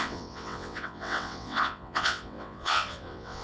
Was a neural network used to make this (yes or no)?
yes